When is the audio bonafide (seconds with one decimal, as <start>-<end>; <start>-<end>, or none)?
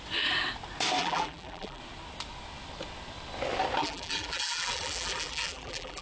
0.0-1.0; 1.8-3.8